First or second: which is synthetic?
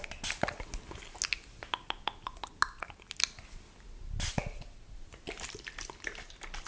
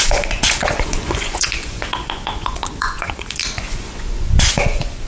second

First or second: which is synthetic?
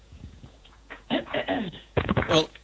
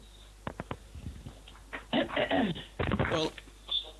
first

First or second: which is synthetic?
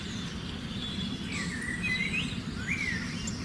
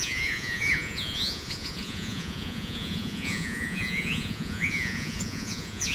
second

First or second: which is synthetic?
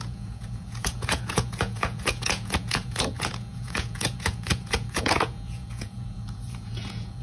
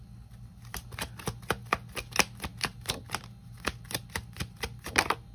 first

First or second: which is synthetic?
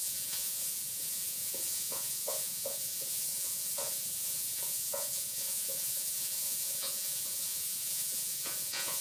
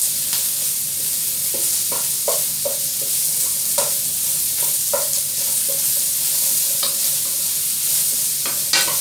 first